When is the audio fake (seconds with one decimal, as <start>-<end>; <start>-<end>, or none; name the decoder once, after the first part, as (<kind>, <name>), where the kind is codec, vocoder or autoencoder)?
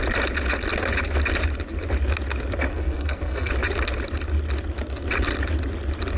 2.7-3.5 (codec, SNAC)